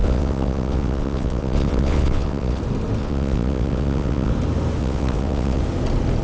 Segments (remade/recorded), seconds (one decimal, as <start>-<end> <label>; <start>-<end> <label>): 0.0-2.6 remade; 2.6-3.0 recorded; 3.0-4.3 remade; 4.3-4.8 recorded; 4.8-5.6 remade; 5.6-6.2 recorded